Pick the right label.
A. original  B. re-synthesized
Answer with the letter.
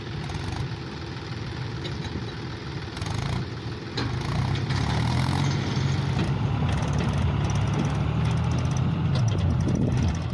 A